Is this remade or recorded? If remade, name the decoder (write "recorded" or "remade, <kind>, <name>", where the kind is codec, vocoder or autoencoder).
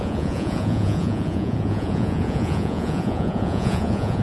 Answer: remade, vocoder, Vocos